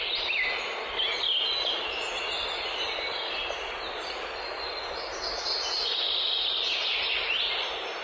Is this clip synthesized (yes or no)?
no